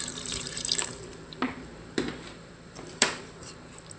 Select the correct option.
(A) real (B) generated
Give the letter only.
B